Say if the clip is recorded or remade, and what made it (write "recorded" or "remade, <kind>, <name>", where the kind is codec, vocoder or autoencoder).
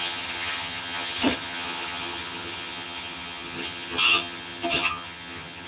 remade, vocoder, HiFi-GAN